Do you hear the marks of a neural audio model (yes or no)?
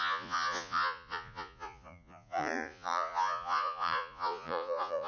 yes